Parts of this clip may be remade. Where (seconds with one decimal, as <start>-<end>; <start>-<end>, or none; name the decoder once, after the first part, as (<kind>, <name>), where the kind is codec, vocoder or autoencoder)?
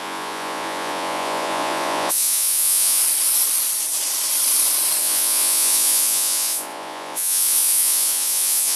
0.0-3.0 (vocoder, Vocos); 5.0-8.8